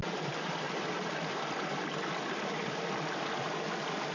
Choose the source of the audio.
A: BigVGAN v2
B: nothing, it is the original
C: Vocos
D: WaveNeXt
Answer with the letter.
B